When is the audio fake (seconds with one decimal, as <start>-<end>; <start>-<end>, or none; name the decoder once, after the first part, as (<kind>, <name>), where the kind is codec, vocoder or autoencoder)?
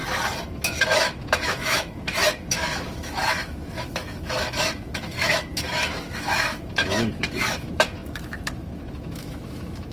0.5-9.9 (autoencoder, DAC-VAE)